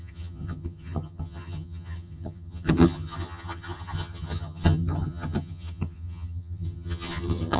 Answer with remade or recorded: remade